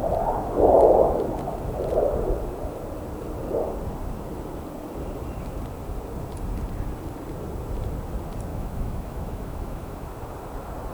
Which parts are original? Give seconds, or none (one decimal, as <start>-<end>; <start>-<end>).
0.0-8.5; 10.1-10.9